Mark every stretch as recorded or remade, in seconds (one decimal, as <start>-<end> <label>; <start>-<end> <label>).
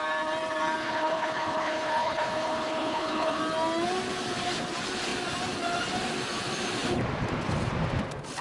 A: 0.0-0.8 recorded; 0.8-3.4 remade; 3.4-8.4 recorded